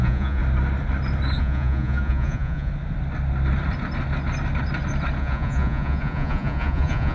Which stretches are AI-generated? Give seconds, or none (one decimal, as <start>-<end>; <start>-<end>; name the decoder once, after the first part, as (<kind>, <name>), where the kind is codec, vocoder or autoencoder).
0.0-0.4 (vocoder, Vocos); 1.4-2.7; 5.2-7.1